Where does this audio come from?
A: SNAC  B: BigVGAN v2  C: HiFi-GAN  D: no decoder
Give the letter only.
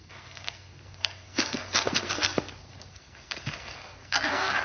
A